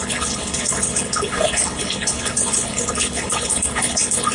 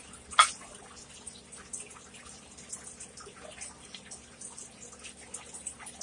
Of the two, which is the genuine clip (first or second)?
second